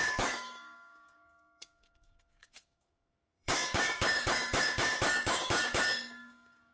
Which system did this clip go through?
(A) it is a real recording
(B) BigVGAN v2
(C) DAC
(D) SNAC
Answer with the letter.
C